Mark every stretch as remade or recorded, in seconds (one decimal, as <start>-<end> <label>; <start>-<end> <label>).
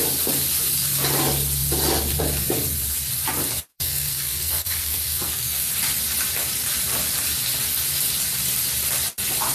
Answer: 0.0-3.7 recorded; 3.7-5.7 remade; 5.7-9.5 recorded